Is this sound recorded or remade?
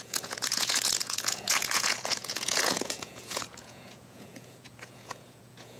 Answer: remade